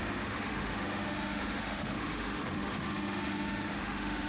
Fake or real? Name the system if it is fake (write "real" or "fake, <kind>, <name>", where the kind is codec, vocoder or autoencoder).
fake, autoencoder, DAC-VAE